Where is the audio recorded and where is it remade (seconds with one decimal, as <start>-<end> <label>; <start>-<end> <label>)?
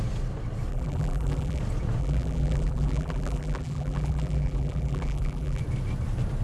0.0-0.7 recorded; 0.7-1.6 remade; 1.6-2.0 recorded; 2.0-5.6 remade; 5.6-6.4 recorded